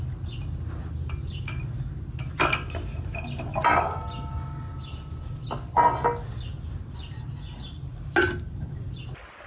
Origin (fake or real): real